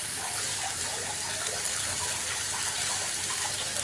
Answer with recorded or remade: recorded